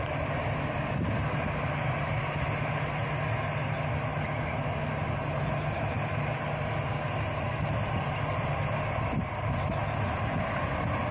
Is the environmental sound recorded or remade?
recorded